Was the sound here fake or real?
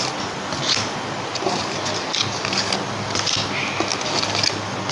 real